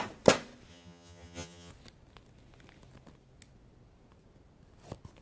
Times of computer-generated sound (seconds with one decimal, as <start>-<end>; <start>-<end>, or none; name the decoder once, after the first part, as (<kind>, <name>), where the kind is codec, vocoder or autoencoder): 0.7-1.7 (vocoder, HiFi-GAN)